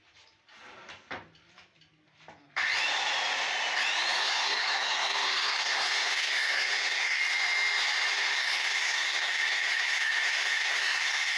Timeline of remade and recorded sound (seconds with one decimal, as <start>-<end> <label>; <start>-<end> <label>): 0.0-4.2 recorded; 4.2-7.2 remade; 7.2-8.1 recorded; 8.1-11.4 remade